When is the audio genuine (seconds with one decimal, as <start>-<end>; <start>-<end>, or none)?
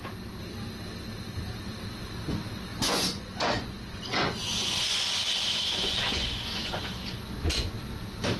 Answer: 0.0-2.7; 7.7-8.4